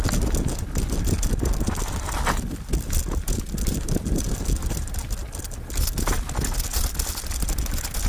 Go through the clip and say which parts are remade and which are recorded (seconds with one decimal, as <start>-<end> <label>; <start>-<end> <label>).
0.0-8.1 recorded